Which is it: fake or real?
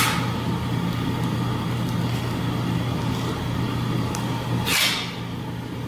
real